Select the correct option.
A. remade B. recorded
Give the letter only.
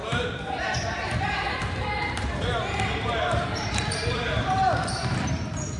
A